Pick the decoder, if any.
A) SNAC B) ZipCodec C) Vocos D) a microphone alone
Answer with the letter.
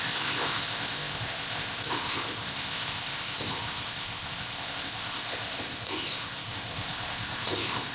B